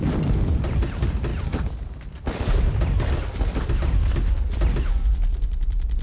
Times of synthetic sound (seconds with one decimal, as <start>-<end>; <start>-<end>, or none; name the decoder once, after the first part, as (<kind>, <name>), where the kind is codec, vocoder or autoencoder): none